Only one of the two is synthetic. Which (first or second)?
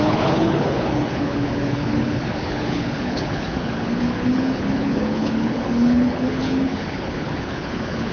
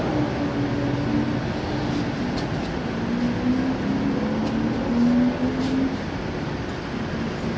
first